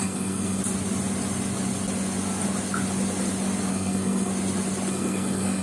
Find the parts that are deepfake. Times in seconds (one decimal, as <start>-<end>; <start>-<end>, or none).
0.0-0.6; 3.7-4.3; 4.9-5.6